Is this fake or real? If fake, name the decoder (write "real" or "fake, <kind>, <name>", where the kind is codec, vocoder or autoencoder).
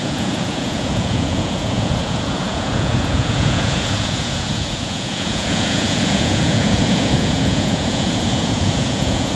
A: fake, vocoder, Vocos